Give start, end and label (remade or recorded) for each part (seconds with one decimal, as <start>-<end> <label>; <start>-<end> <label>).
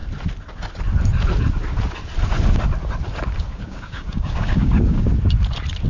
0.0-3.5 recorded; 3.5-5.1 remade; 5.1-5.9 recorded